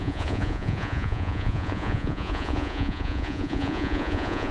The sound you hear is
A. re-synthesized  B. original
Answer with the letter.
A